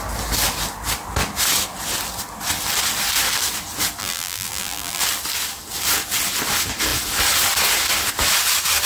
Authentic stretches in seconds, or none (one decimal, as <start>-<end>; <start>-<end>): 0.0-4.0; 5.0-8.9